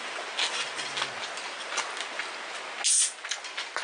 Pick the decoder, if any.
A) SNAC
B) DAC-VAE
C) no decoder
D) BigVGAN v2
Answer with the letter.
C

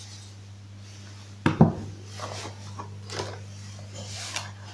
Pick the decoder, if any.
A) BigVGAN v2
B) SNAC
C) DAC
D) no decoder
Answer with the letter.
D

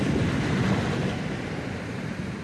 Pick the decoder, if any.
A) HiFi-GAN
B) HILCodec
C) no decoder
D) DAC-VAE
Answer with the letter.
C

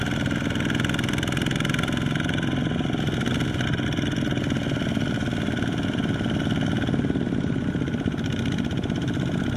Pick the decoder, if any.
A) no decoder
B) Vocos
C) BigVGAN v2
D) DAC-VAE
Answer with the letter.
A